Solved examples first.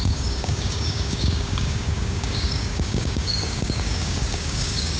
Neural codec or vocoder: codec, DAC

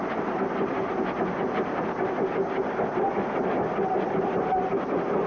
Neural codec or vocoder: none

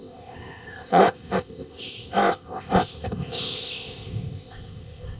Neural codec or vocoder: codec, ZipCodec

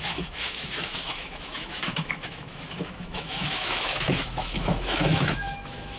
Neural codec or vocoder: autoencoder, DAC-VAE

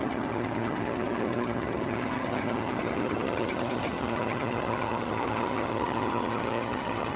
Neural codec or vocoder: vocoder, HiFi-GAN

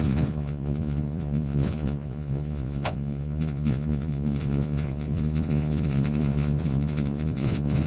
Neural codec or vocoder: vocoder, Vocos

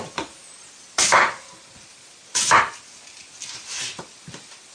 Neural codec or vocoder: none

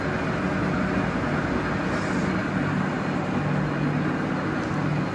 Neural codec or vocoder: none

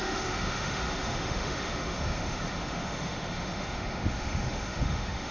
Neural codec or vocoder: autoencoder, DAC-VAE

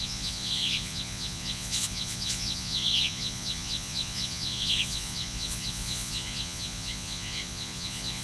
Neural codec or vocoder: vocoder, Vocos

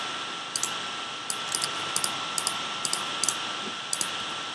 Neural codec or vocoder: none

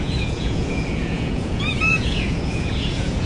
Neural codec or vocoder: vocoder, Vocos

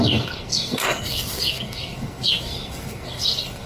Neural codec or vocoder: codec, SNAC